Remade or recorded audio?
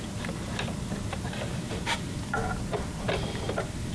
remade